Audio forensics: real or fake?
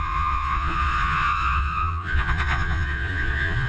fake